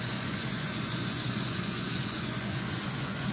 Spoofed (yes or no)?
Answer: yes